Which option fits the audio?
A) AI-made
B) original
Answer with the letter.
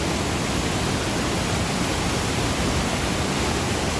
B